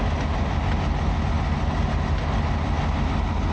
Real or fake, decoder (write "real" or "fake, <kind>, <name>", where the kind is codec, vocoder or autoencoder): real